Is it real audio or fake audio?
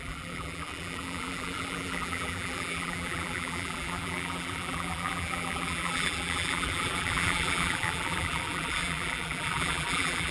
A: fake